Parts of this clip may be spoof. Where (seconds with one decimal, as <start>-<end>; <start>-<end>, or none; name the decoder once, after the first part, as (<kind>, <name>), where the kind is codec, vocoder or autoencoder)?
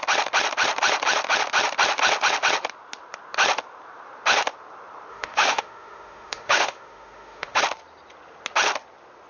5.1-7.6 (autoencoder, DAC-VAE)